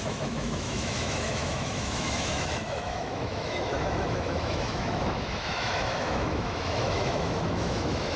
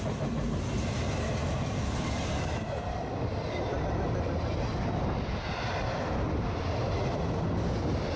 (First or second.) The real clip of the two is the second